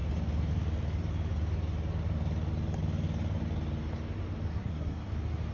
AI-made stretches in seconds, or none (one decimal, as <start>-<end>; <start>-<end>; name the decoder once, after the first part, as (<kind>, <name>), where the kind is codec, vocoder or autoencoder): 4.5-5.1 (codec, SNAC)